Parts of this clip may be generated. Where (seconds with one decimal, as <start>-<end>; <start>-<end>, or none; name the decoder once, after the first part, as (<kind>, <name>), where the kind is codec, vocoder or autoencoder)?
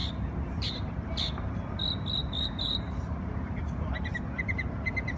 0.0-1.6 (vocoder, BigVGAN v2); 2.2-4.2